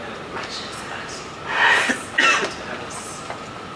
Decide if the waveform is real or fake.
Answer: real